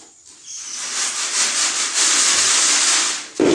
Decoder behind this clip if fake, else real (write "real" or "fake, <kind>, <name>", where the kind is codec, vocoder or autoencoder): real